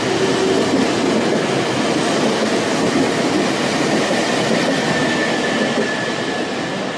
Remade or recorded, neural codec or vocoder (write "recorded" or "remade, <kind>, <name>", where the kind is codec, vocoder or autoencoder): recorded